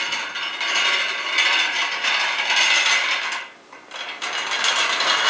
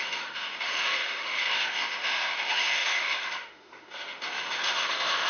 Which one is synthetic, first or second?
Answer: second